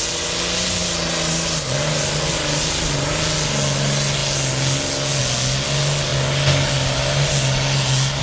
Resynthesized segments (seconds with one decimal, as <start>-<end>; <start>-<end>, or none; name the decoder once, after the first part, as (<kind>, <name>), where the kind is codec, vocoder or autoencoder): none